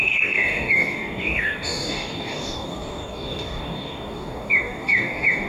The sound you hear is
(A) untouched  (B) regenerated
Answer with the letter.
B